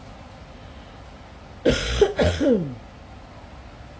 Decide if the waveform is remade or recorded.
recorded